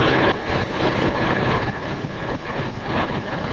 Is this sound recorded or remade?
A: remade